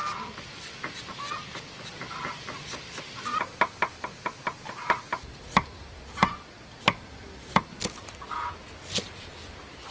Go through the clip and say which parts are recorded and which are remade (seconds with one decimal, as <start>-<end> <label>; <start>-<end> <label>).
0.0-9.9 recorded